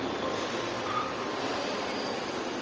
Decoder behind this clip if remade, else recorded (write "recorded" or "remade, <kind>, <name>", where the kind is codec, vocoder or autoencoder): recorded